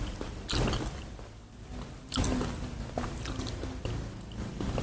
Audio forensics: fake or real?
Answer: real